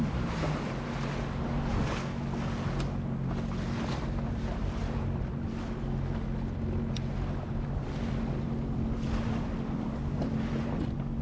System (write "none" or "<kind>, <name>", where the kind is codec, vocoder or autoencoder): none